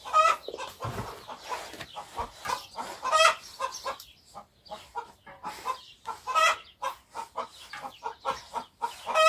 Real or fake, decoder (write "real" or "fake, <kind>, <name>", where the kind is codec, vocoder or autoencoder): real